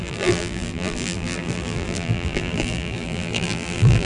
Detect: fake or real fake